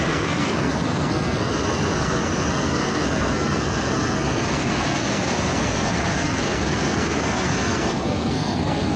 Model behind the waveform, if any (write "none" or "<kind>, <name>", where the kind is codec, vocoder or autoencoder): codec, SNAC